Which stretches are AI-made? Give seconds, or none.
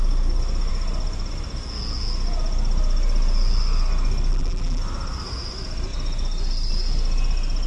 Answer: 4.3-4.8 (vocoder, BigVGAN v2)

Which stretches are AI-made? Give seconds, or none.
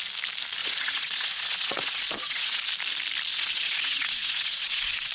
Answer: 0.6-2.6 (vocoder, Vocos); 3.3-5.1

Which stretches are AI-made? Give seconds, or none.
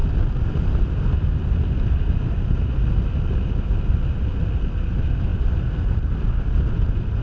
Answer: none